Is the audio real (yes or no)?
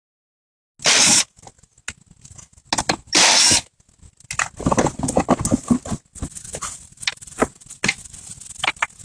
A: yes